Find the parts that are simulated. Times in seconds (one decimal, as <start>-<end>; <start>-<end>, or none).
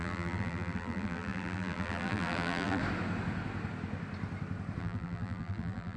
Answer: 0.0-2.8; 4.8-6.0